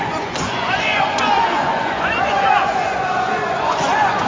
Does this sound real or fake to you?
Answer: fake